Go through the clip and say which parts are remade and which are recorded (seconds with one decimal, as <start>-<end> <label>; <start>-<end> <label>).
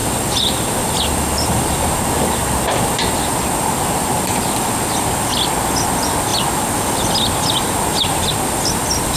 0.0-9.2 recorded